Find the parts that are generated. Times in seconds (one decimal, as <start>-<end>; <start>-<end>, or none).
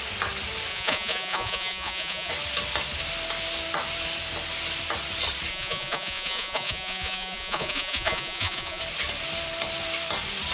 0.7-2.3; 5.5-8.8